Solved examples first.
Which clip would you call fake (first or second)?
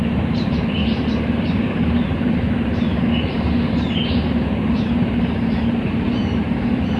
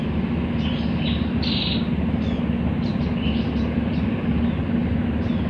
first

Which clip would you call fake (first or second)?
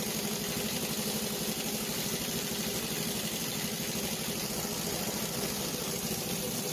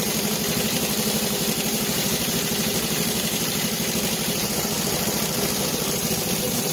second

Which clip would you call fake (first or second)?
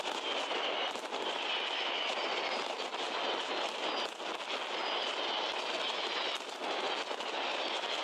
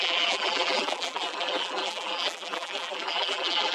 second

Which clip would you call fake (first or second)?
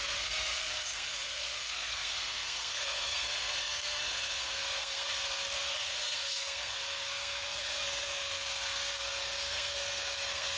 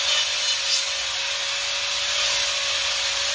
first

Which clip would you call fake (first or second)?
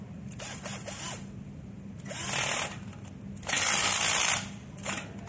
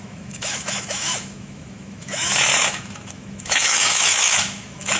second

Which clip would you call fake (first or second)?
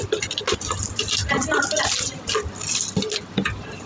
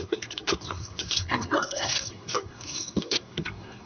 second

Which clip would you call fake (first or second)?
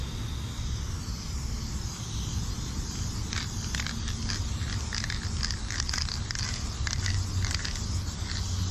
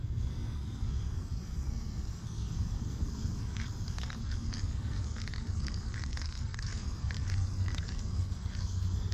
second